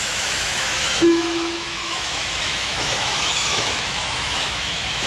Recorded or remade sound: remade